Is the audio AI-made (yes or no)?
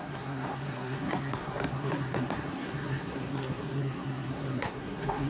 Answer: yes